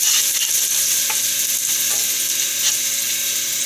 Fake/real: real